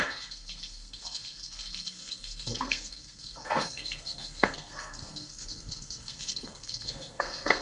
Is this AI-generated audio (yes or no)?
yes